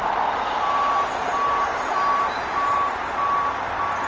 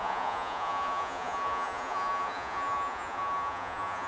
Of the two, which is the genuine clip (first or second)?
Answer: first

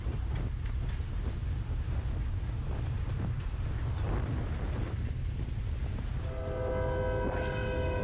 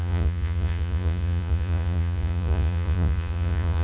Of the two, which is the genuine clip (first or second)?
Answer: first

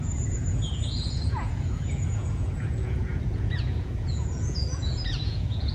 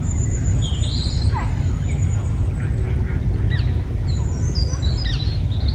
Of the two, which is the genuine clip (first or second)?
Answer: second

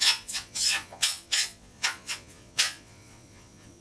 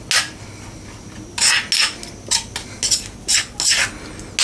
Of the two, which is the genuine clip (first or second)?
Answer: second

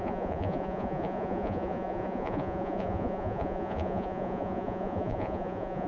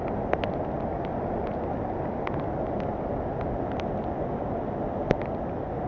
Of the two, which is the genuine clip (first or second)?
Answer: second